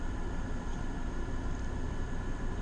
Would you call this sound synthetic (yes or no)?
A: no